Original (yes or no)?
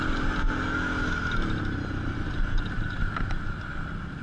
yes